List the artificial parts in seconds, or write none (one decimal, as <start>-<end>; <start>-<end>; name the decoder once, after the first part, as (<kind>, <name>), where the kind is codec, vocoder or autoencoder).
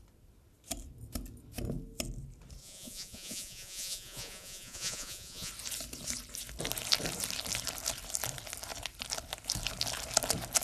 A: 2.6-5.5 (vocoder, Vocos)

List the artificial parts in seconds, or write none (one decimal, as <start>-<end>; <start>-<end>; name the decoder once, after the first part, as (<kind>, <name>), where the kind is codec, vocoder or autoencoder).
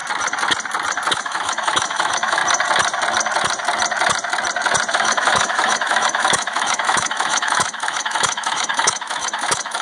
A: 1.1-2.4 (autoencoder, DAC-VAE); 4.9-9.8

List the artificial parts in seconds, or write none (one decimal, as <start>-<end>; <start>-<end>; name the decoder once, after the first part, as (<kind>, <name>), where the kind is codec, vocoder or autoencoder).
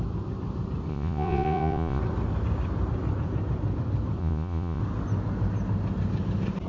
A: 0.9-2.0 (vocoder, Vocos); 4.2-4.8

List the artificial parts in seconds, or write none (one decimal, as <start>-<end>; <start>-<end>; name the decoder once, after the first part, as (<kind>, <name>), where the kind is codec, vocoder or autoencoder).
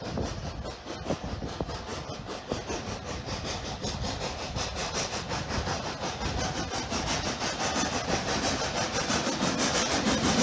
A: none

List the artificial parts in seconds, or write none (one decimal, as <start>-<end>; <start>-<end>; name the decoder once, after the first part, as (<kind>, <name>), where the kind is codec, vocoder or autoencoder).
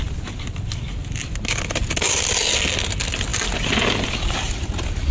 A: none